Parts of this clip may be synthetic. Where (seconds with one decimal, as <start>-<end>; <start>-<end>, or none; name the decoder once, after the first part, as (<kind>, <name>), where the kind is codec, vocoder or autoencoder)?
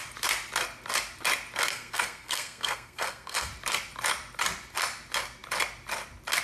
1.7-3.5 (codec, SNAC)